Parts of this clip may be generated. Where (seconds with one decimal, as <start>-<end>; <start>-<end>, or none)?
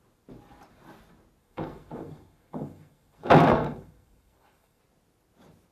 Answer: 1.4-4.8